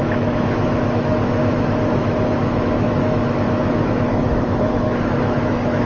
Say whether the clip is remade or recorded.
remade